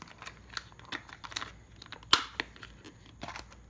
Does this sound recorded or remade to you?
recorded